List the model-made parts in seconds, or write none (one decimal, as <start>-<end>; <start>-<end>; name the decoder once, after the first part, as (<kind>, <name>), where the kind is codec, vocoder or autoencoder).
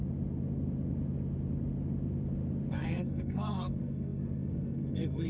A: 2.7-5.3 (codec, SNAC)